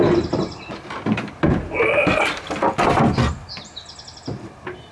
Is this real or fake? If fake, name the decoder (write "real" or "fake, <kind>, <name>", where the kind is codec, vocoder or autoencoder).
real